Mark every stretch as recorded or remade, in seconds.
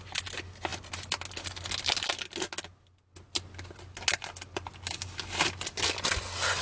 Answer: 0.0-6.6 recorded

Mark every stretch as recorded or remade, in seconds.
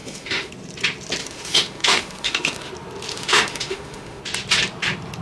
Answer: 0.0-0.5 remade; 0.5-1.2 recorded; 1.2-2.7 remade; 2.7-3.1 recorded; 3.1-4.2 remade; 4.2-5.2 recorded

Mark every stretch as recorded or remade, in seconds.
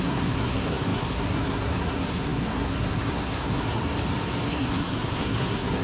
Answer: 0.0-3.8 remade; 3.8-4.5 recorded; 4.5-5.8 remade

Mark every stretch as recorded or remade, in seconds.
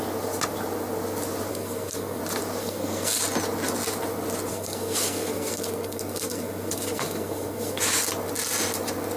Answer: 0.0-1.5 recorded; 1.5-2.2 remade; 2.2-2.6 recorded; 2.6-3.2 remade; 3.2-4.5 recorded; 4.5-7.8 remade; 7.8-9.2 recorded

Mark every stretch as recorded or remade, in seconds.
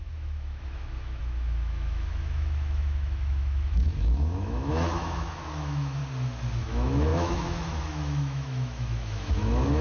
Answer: 0.0-6.0 remade; 6.0-6.6 recorded; 6.6-9.8 remade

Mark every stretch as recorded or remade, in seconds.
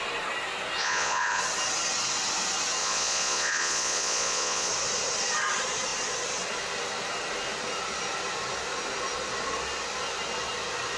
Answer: 0.0-0.8 recorded; 0.8-1.4 remade; 1.4-2.8 recorded; 2.8-4.7 remade; 4.7-11.0 recorded